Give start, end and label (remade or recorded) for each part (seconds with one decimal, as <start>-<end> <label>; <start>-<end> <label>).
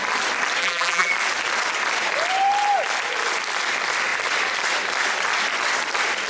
0.0-0.6 recorded; 0.6-1.1 remade; 1.1-6.3 recorded